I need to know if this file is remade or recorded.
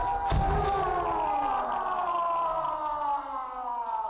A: recorded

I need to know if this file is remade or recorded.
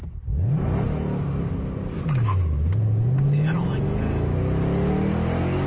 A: recorded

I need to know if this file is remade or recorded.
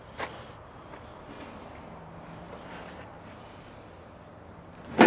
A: recorded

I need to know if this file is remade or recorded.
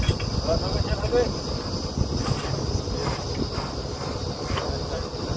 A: recorded